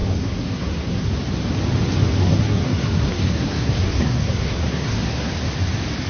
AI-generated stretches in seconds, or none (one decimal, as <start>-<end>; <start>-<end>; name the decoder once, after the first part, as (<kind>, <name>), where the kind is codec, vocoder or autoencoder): 0.0-1.1 (codec, SNAC); 2.2-5.3